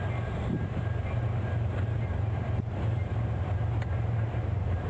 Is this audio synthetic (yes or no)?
yes